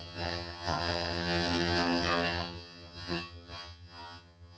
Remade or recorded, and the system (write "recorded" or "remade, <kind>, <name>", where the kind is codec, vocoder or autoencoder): remade, vocoder, HiFi-GAN